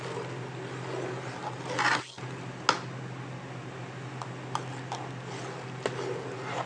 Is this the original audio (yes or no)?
yes